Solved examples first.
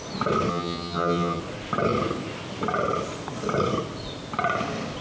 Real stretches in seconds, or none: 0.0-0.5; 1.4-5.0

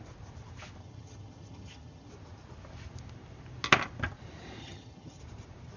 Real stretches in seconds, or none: 0.0-0.8; 2.1-4.6; 5.2-5.8